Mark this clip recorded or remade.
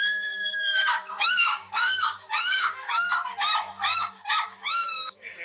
remade